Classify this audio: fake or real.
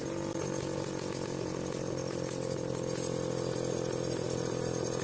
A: real